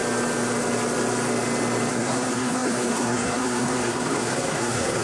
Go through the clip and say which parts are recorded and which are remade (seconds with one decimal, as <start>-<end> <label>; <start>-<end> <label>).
0.0-1.9 recorded; 1.9-5.0 remade